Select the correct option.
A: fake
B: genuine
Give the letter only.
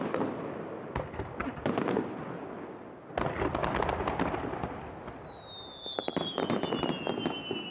B